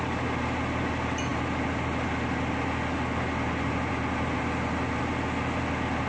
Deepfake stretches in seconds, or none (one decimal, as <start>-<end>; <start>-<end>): none